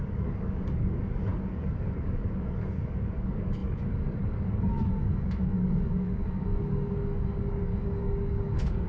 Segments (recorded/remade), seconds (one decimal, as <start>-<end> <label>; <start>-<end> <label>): 0.0-8.9 remade